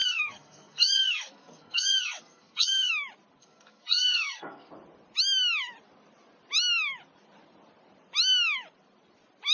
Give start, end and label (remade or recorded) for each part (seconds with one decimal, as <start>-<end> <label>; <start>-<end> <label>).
0.0-2.9 remade; 2.9-3.4 recorded; 3.4-4.7 remade; 4.7-9.5 recorded